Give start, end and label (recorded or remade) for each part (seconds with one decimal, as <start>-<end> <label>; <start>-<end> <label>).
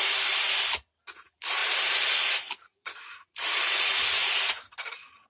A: 0.0-2.7 recorded; 2.7-3.7 remade; 3.7-4.2 recorded; 4.2-4.7 remade; 4.7-5.3 recorded